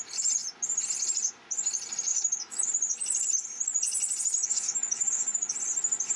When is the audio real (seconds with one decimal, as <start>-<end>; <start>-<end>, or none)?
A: 0.0-2.1; 2.7-4.4; 5.5-6.2